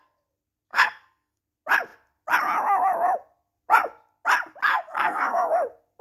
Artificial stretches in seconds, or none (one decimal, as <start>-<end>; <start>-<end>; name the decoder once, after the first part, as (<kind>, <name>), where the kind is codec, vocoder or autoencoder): 0.7-1.4 (codec, SNAC); 4.7-5.5